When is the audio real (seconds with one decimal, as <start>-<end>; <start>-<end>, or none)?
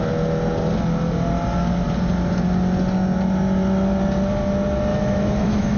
0.0-4.9